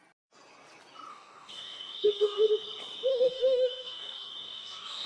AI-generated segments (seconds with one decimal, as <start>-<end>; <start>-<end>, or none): 1.1-2.5; 3.1-5.1